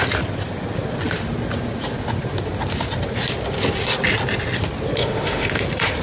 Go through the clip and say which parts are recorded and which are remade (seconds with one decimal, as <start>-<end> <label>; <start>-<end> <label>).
0.0-5.0 recorded; 5.0-5.5 remade; 5.5-6.0 recorded